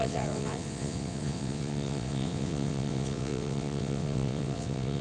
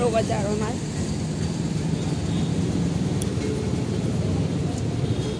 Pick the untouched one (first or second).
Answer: second